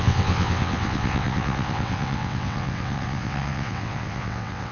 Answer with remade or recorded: remade